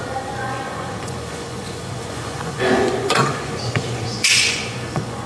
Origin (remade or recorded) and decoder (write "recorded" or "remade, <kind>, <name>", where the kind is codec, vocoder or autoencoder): remade, vocoder, Vocos